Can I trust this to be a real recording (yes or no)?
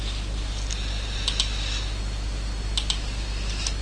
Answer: yes